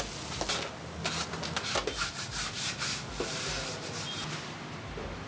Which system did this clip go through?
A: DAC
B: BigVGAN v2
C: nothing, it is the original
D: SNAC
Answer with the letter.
C